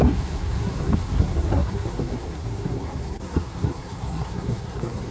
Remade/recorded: remade